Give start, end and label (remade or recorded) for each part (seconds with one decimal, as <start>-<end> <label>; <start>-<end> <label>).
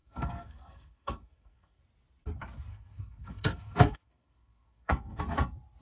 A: 0.0-1.8 remade; 1.8-2.7 recorded; 2.7-5.2 remade; 5.2-5.8 recorded